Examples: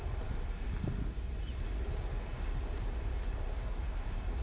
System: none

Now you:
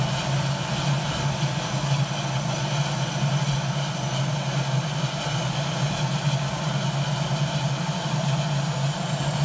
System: none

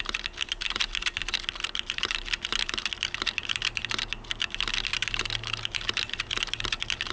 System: none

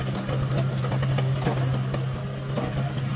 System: none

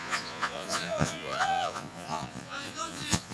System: vocoder, Vocos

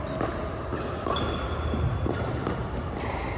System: none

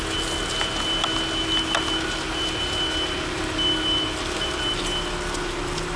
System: none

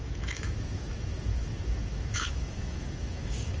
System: autoencoder, DAC-VAE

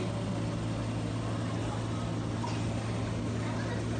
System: none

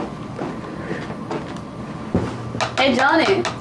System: none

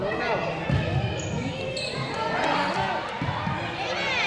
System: none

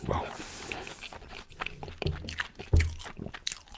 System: none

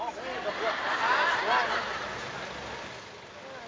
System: none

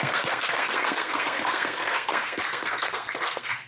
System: codec, SNAC